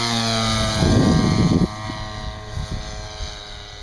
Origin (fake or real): real